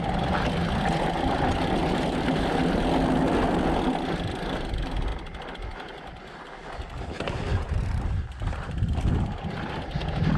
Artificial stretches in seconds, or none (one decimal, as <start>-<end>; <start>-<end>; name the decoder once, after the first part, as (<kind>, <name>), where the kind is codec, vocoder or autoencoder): 1.8-2.6 (vocoder, BigVGAN v2); 7.5-8.8